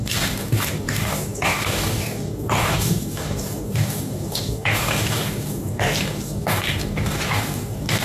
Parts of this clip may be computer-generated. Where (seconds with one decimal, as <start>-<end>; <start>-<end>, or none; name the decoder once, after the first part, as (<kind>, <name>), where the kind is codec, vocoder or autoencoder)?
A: 0.0-8.0 (codec, DAC)